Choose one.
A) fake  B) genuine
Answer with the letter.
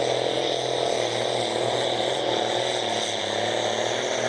B